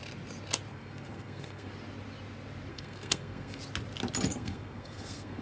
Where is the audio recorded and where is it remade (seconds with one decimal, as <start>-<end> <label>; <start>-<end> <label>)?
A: 0.0-0.7 recorded; 0.7-1.7 remade; 1.7-2.7 recorded; 2.7-3.6 remade; 3.6-4.3 recorded; 4.3-5.4 remade